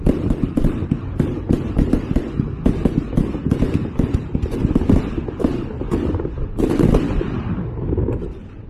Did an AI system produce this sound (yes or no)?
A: no